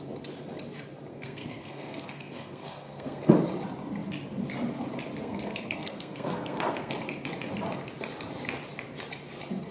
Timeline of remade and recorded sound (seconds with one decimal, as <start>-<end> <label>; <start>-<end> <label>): 0.0-1.1 recorded; 1.1-3.3 remade; 3.3-5.2 recorded; 5.2-6.9 remade; 6.9-9.7 recorded